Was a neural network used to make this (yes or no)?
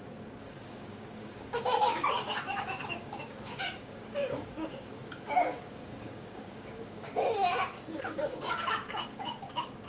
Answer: yes